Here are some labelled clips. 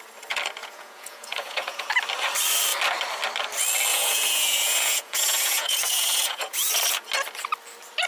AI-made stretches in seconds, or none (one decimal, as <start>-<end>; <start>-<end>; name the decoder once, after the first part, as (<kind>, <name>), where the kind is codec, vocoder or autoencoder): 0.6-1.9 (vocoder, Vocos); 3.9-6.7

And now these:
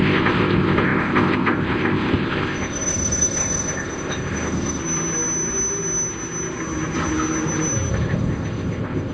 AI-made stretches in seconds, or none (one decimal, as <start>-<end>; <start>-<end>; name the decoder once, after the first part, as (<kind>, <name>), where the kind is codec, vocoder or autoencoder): 0.0-4.8 (codec, ZipCodec); 7.9-9.1

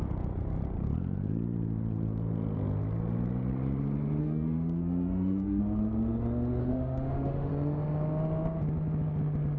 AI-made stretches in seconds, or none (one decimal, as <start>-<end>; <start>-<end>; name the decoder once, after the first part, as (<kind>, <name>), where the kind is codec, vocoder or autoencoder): 4.2-5.6 (autoencoder, DAC-VAE); 6.6-7.5